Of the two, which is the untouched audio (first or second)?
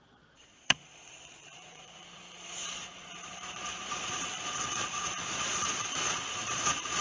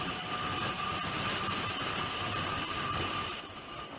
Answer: second